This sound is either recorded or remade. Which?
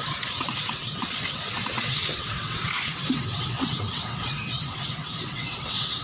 remade